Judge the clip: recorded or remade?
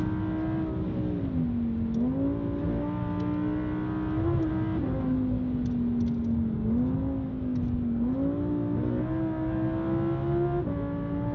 recorded